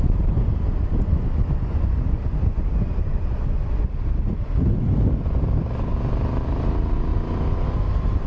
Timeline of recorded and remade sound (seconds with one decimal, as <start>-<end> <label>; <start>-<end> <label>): 0.0-1.6 recorded; 1.6-2.6 remade; 2.6-8.3 recorded